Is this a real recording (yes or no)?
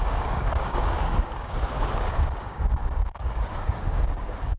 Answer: no